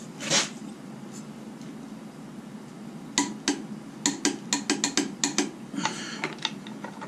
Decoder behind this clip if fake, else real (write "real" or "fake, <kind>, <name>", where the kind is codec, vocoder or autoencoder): real